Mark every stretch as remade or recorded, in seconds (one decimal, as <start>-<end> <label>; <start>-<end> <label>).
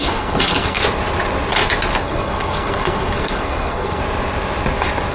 0.0-0.8 remade; 0.8-2.0 recorded; 2.0-4.0 remade; 4.0-5.1 recorded